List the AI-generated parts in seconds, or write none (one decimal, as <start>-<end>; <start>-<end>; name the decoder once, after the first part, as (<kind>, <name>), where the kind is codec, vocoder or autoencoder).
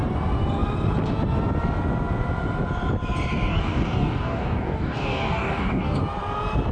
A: 3.5-6.0 (codec, DAC)